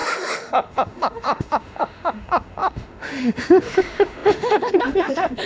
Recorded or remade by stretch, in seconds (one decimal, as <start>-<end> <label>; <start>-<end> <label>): 0.0-5.5 remade